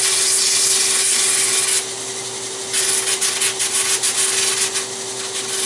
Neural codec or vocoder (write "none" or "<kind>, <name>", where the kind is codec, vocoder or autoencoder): none